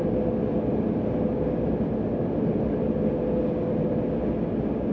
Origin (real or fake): real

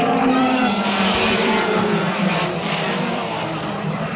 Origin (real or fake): fake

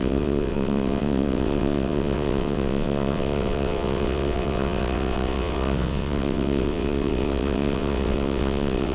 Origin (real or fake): fake